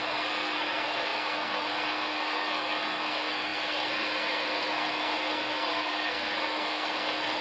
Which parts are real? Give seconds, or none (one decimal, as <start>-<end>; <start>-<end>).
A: none